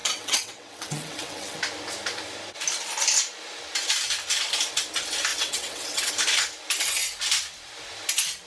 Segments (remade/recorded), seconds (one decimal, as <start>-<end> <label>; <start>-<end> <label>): 0.0-1.6 remade; 1.6-5.3 recorded; 5.3-6.1 remade; 6.1-8.5 recorded